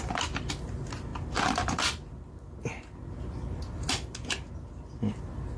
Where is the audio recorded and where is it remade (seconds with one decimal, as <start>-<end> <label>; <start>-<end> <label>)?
0.0-5.6 recorded